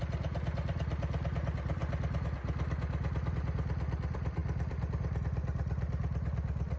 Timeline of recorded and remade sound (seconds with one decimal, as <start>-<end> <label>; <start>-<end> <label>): 0.0-1.8 remade; 1.8-3.3 recorded; 3.3-6.8 remade